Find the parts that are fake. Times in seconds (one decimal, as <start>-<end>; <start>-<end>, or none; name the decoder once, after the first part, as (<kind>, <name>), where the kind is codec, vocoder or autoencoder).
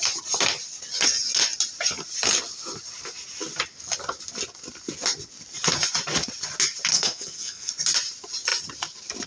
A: 6.9-7.7 (codec, SNAC)